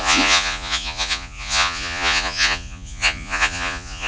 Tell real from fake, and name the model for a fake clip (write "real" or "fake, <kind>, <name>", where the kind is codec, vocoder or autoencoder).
fake, vocoder, Vocos